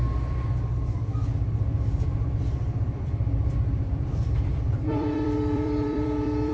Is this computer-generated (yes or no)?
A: yes